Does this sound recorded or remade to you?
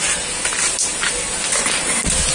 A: recorded